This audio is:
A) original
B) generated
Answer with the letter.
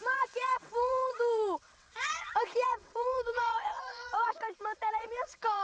B